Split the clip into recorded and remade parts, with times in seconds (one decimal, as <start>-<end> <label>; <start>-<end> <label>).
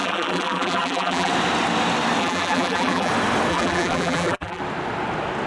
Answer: 0.0-1.3 remade; 1.3-2.2 recorded; 2.2-3.1 remade; 3.1-3.5 recorded; 3.5-4.6 remade; 4.6-5.5 recorded